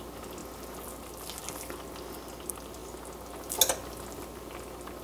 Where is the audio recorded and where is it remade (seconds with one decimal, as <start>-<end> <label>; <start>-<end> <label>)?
0.0-5.0 recorded